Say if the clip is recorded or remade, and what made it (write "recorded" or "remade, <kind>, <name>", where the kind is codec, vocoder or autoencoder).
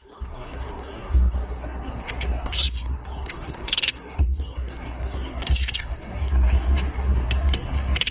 remade, codec, SNAC